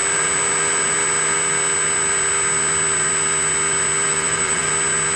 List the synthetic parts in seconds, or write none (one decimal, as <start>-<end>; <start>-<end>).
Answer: 4.1-4.7